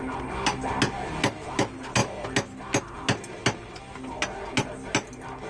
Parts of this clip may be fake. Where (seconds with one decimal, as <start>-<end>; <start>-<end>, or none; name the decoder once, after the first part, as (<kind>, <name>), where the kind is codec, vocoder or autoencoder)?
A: none